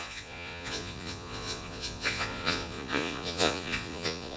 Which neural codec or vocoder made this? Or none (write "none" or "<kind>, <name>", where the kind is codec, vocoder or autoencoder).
vocoder, Vocos